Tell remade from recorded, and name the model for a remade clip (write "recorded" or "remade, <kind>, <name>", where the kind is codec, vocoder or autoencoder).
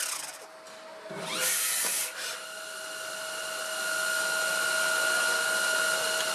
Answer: recorded